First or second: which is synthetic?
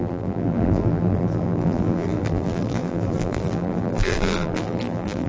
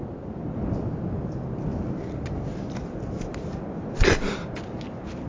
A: first